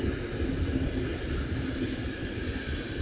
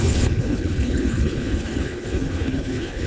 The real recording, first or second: first